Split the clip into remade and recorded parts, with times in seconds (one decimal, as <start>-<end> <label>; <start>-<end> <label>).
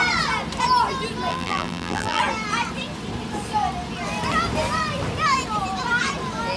0.0-1.3 recorded; 1.3-2.2 remade; 2.2-6.6 recorded